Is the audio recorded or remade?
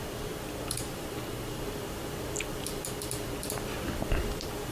remade